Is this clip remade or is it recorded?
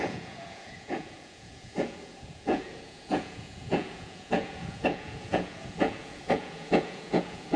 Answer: remade